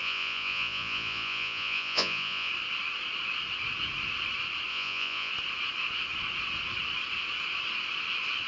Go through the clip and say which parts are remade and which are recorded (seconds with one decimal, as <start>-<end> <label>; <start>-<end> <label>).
0.0-2.5 remade; 2.5-4.7 recorded; 4.7-5.3 remade; 5.3-8.5 recorded